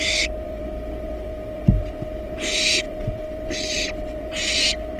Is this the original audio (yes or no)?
no